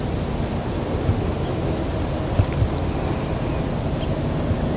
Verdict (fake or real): real